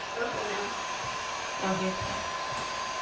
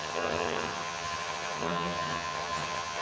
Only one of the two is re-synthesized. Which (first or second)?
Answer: second